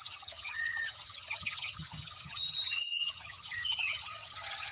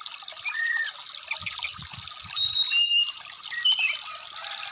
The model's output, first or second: first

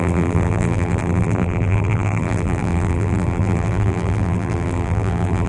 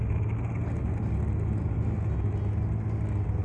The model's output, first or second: first